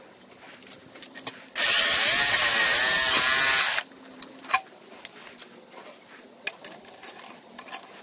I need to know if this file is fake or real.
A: real